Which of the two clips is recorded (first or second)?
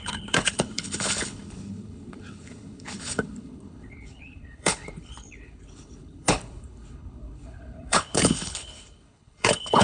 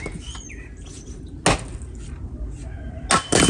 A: second